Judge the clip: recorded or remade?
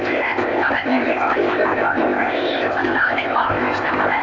remade